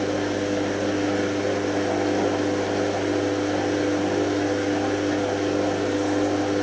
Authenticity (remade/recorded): recorded